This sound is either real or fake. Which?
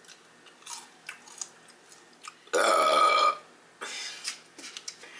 real